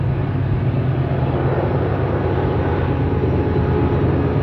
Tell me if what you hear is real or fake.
real